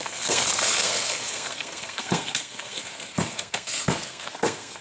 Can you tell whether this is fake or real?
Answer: fake